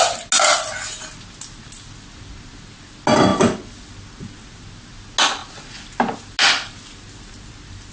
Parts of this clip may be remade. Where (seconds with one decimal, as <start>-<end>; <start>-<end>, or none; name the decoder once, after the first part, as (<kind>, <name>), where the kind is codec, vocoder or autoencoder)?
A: none